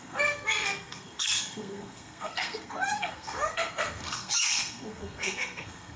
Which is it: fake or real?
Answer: fake